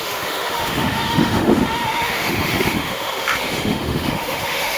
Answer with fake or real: fake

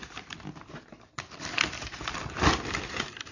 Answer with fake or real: real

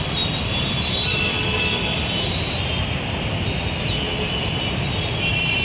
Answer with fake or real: real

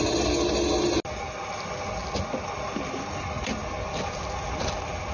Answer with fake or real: real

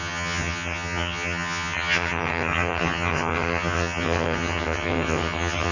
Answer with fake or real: fake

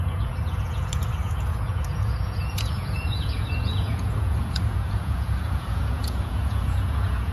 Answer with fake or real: fake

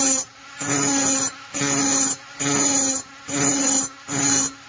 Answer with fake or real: real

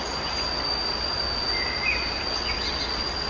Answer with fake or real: real